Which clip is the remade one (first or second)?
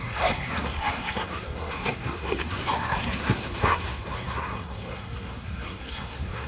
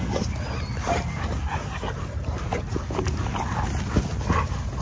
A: first